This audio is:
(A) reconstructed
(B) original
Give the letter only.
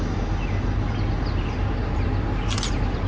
B